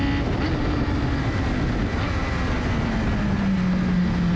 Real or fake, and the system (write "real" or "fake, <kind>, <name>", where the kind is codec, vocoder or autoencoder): real